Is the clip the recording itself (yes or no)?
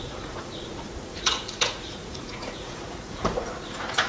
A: no